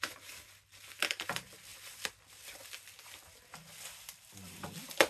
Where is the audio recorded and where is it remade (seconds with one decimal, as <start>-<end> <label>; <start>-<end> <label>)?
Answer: 0.0-1.7 recorded; 1.7-2.6 remade; 2.6-5.1 recorded